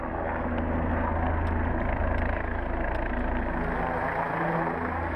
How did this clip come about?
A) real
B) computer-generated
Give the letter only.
A